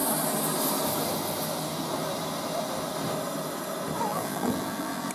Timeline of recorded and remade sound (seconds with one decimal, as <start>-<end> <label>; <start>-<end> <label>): 0.0-4.1 recorded; 4.1-5.1 remade